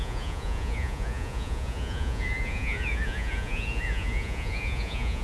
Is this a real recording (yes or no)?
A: no